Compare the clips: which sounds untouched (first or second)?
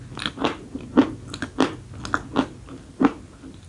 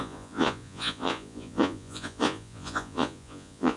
first